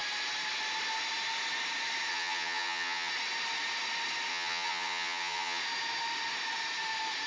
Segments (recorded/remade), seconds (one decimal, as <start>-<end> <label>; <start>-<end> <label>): 0.0-2.1 recorded; 2.1-3.1 remade; 3.1-4.3 recorded; 4.3-5.6 remade; 5.6-7.3 recorded